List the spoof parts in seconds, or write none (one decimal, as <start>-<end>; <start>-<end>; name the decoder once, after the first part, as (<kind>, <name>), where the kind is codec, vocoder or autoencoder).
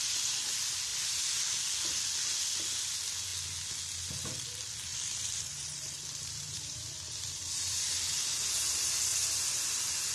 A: 4.9-8.2 (vocoder, BigVGAN v2); 9.1-10.1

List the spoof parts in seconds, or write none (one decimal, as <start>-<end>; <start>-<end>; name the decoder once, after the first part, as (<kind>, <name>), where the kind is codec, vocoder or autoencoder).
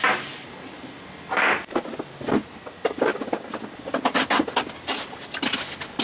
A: none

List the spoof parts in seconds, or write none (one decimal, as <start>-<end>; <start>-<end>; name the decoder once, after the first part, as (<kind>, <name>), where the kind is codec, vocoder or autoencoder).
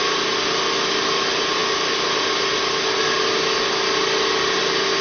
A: 0.0-1.6 (vocoder, BigVGAN v2); 4.6-5.0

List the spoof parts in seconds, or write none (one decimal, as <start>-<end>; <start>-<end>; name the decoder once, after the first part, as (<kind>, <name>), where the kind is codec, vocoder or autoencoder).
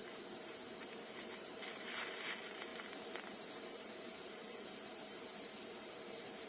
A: 0.0-6.5 (vocoder, BigVGAN v2)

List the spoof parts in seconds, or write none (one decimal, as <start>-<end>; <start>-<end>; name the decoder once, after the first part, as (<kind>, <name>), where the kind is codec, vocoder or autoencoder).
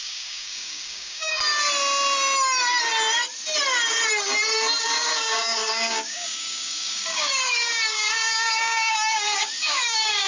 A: 0.0-1.3 (codec, DAC); 4.8-10.3